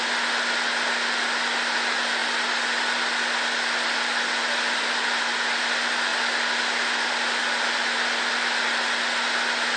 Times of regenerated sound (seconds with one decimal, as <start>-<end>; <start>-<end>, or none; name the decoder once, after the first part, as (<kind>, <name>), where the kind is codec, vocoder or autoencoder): none